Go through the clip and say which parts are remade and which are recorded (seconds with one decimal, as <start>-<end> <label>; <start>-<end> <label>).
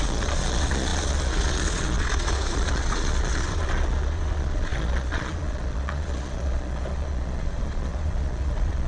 0.0-8.9 remade